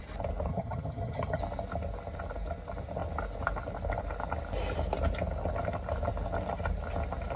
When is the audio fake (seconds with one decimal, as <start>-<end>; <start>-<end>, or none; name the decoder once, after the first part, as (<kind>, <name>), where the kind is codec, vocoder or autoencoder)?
0.5-1.4 (vocoder, HiFi-GAN)

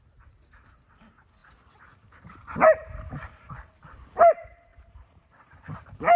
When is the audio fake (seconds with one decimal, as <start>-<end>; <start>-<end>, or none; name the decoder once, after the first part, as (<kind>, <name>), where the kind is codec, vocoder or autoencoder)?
1.4-3.7 (vocoder, BigVGAN v2); 4.7-6.2

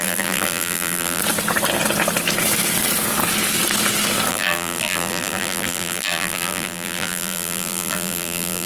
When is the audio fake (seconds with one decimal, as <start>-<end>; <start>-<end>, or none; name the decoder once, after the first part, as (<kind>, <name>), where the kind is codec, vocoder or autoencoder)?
0.0-1.2 (vocoder, BigVGAN v2); 4.3-8.7

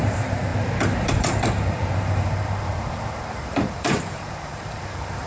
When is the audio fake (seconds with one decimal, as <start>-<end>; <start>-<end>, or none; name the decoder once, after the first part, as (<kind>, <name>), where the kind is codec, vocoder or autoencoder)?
0.0-5.3 (vocoder, BigVGAN v2)